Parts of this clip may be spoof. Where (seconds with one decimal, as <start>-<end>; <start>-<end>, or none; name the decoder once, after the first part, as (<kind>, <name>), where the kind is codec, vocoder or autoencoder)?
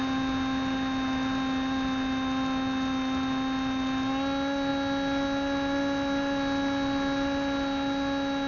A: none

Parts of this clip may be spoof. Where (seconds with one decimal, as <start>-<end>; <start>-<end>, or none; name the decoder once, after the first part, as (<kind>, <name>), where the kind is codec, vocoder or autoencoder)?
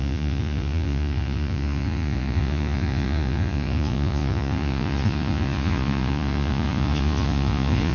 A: 0.0-7.9 (vocoder, Vocos)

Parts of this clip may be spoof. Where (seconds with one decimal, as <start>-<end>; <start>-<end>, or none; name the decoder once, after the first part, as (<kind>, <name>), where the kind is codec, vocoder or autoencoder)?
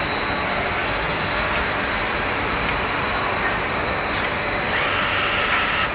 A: none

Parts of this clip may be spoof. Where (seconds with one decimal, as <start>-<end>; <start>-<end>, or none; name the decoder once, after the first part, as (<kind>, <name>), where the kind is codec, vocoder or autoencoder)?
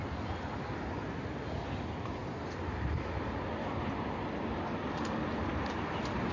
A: none